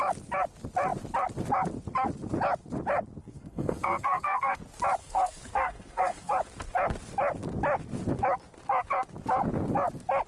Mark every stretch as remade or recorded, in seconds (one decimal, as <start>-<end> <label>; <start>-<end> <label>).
0.0-3.2 recorded; 3.2-4.6 remade; 4.6-5.0 recorded; 5.0-6.3 remade; 6.3-10.3 recorded